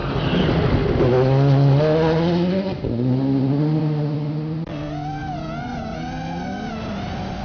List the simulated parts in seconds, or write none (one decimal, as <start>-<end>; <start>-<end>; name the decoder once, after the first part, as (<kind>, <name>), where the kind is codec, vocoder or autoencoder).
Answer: none